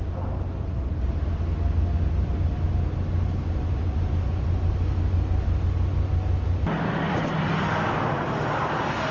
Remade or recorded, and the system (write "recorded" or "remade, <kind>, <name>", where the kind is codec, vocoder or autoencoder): recorded